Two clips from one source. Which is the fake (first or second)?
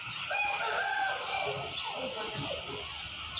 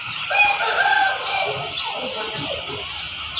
second